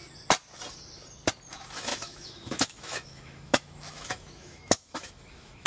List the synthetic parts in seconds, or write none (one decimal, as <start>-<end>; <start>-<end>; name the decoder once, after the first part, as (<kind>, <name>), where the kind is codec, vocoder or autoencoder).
1.5-5.7 (autoencoder, DAC-VAE)